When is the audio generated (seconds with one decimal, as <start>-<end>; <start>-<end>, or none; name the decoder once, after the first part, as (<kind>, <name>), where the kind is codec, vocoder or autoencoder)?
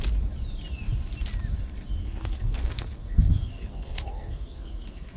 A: 2.0-5.2 (codec, SNAC)